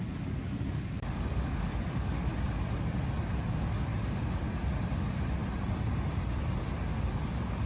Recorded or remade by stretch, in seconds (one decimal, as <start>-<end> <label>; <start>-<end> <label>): 0.0-2.3 remade; 2.3-3.5 recorded; 3.5-3.9 remade; 3.9-7.3 recorded; 7.3-7.7 remade

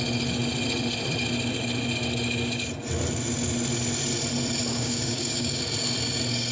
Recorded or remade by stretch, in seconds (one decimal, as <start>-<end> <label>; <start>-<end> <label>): 0.0-4.7 recorded; 4.7-5.6 remade; 5.6-6.5 recorded

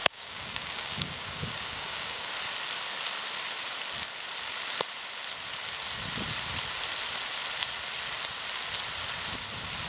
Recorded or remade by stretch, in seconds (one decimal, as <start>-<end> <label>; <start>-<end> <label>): 0.0-2.3 remade; 2.3-9.9 recorded

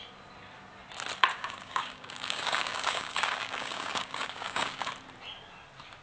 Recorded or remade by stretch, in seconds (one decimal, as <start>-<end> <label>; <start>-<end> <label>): 0.0-1.3 recorded; 1.3-4.9 remade; 4.9-6.0 recorded

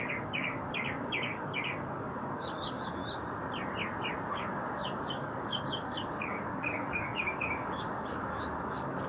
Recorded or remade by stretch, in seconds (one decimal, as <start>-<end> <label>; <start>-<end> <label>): 0.0-3.0 remade; 3.0-4.3 recorded; 4.3-9.1 remade

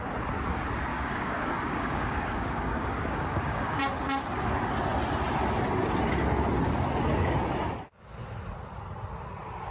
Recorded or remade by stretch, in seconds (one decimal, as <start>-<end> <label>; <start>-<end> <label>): 0.0-0.9 recorded; 0.9-3.8 remade; 3.8-9.7 recorded